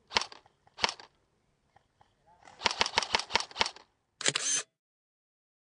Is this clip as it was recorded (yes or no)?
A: yes